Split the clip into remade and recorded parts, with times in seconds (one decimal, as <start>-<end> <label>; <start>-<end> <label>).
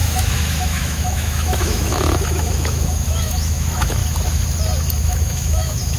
0.0-4.0 remade; 4.0-5.0 recorded; 5.0-6.0 remade